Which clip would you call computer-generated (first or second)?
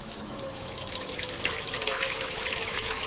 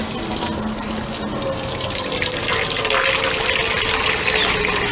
first